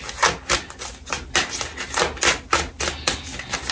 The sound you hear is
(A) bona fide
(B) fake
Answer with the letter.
A